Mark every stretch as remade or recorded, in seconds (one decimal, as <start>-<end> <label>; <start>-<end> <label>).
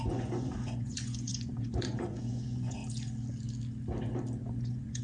0.0-2.8 remade; 2.8-4.4 recorded; 4.4-5.0 remade